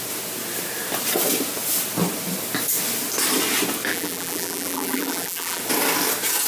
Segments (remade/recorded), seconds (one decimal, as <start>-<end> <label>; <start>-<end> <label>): 0.0-3.9 recorded; 3.9-5.6 remade; 5.6-6.5 recorded